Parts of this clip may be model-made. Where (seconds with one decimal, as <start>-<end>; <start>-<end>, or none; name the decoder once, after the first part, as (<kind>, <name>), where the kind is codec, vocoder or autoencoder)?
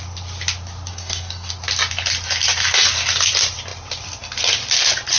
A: 0.9-1.5 (codec, DAC)